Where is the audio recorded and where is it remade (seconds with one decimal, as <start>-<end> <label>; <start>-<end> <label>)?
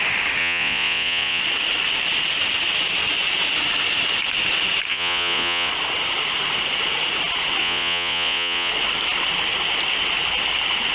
0.0-0.4 recorded; 0.4-1.4 remade; 1.4-4.9 recorded; 4.9-5.7 remade; 5.7-7.6 recorded; 7.6-8.7 remade; 8.7-10.9 recorded